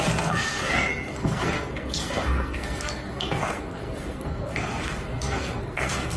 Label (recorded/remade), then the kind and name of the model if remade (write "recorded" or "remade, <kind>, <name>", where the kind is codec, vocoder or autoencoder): remade, codec, SNAC